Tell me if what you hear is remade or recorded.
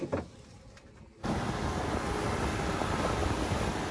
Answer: recorded